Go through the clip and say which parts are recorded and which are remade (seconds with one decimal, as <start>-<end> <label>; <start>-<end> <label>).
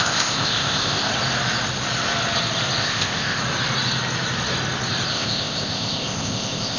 0.0-1.1 remade; 1.1-2.8 recorded; 2.8-3.4 remade; 3.4-5.1 recorded; 5.1-6.8 remade